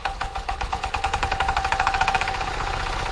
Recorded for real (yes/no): no